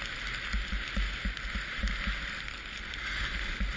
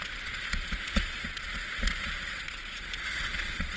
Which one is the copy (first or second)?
second